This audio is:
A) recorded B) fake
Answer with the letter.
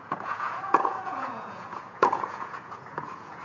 B